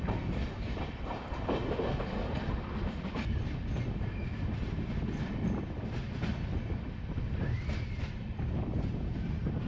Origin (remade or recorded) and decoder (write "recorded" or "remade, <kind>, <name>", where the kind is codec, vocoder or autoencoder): recorded